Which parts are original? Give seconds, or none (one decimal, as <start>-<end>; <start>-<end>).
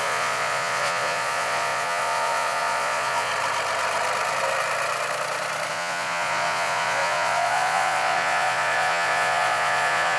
3.3-5.7